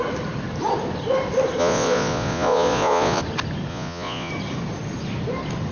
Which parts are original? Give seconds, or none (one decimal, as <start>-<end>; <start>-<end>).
0.0-1.6; 3.2-3.7; 4.3-5.7